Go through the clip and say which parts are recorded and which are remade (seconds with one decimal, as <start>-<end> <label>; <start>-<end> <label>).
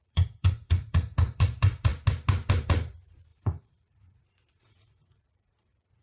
0.0-1.9 remade; 1.9-2.6 recorded; 2.6-6.0 remade